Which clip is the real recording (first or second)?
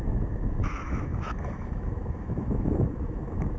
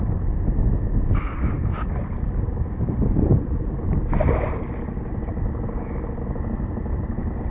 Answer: second